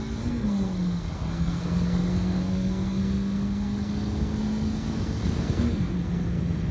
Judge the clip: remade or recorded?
remade